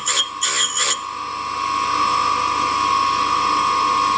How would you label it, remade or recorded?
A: recorded